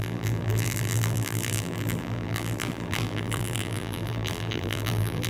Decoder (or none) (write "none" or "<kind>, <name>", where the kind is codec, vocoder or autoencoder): vocoder, BigVGAN v2